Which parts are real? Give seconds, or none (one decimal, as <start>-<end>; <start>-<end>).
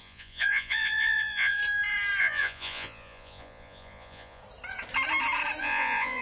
1.6-2.2; 4.4-5.6